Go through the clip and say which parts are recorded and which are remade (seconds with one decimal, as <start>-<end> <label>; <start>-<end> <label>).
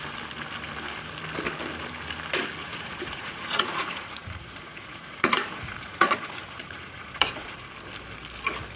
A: 0.0-2.6 recorded; 2.6-7.7 remade; 7.7-8.8 recorded